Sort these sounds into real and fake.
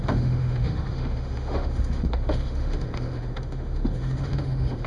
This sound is fake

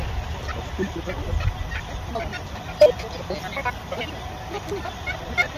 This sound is real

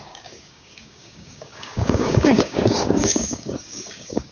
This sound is fake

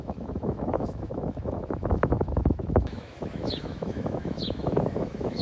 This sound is fake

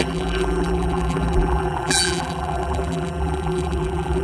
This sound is fake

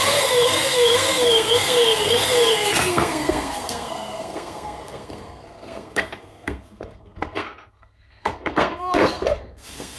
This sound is fake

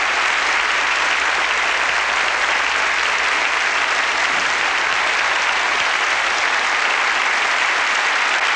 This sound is real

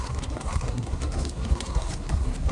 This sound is fake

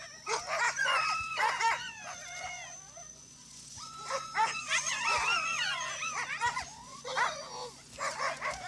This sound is fake